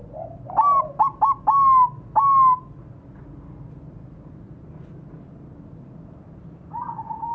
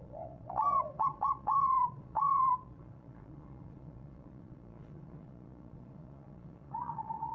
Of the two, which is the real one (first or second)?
first